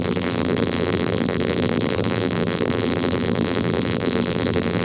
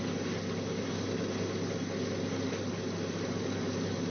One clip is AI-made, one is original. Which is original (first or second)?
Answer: second